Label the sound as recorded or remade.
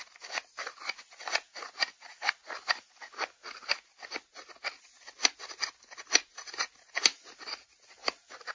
recorded